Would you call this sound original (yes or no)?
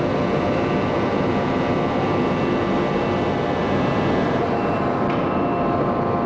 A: yes